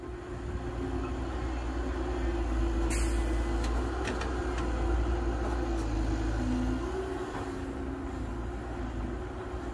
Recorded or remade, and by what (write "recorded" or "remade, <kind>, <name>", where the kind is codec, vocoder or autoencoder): recorded